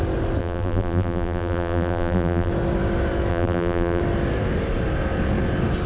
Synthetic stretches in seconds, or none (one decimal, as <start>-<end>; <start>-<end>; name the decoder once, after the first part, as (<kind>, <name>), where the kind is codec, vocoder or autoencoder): 0.4-2.5 (vocoder, BigVGAN v2); 3.3-4.0